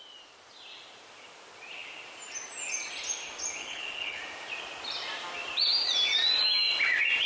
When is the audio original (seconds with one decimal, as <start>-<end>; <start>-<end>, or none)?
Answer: 0.0-3.6; 4.2-7.3